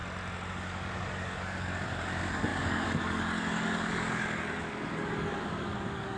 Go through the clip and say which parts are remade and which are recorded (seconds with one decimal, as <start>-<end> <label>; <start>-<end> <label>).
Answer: 0.0-0.5 recorded; 0.5-6.2 remade